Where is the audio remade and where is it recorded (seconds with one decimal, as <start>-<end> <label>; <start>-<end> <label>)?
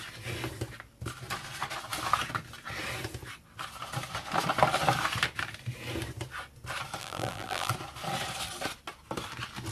0.0-7.0 recorded; 7.0-7.7 remade; 7.7-9.7 recorded